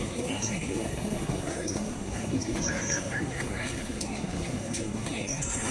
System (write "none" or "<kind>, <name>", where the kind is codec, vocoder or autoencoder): codec, SNAC